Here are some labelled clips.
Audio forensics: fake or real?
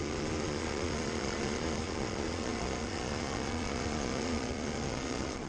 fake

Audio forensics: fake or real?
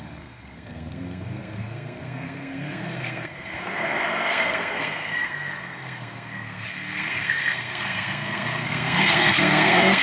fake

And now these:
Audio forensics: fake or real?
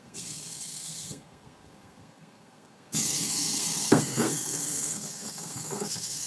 fake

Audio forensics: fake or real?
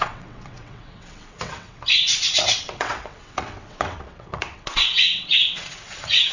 fake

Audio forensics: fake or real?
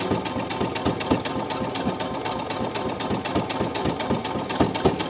real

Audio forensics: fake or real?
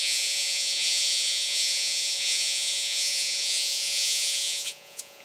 fake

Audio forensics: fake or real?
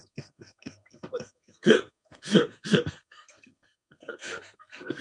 fake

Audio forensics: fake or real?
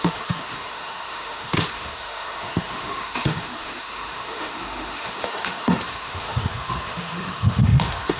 fake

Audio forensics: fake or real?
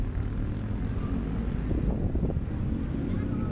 real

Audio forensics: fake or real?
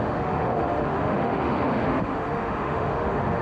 fake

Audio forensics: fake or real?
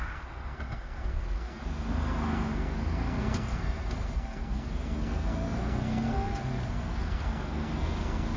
fake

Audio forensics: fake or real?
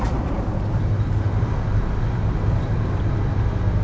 real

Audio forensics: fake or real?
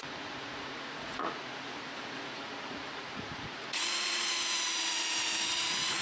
fake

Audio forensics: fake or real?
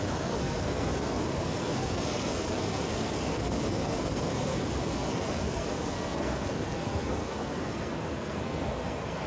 fake